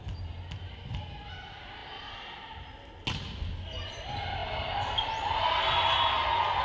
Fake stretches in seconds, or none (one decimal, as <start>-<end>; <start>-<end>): none